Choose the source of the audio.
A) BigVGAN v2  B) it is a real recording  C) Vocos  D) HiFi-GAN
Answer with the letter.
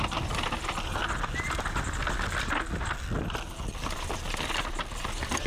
B